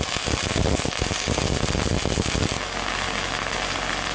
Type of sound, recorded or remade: recorded